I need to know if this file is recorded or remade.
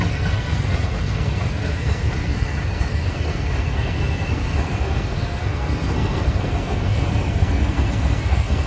remade